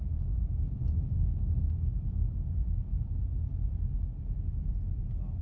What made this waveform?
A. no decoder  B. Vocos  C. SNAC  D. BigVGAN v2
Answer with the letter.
A